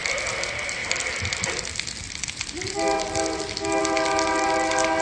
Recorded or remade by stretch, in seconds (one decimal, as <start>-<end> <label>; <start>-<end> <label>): 0.0-5.0 recorded

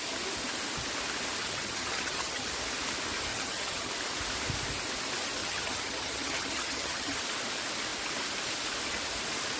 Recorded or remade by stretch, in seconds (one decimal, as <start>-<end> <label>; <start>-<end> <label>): 0.0-1.4 recorded; 1.4-2.5 remade; 2.5-3.3 recorded; 3.3-3.9 remade; 3.9-5.4 recorded; 5.4-7.2 remade; 7.2-9.6 recorded

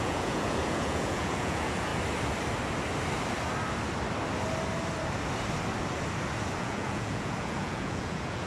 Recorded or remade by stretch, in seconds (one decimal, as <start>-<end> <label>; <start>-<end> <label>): 0.0-1.9 remade; 1.9-6.6 recorded; 6.6-8.5 remade